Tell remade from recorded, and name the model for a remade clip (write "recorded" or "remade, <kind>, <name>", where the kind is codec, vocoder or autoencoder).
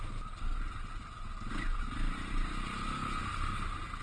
recorded